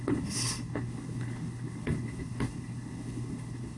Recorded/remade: remade